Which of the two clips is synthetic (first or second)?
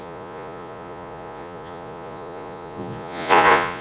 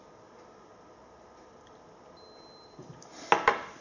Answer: first